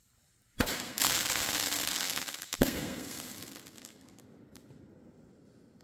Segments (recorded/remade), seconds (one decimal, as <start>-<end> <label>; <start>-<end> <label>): 0.0-0.7 recorded; 0.7-4.2 remade; 4.2-5.8 recorded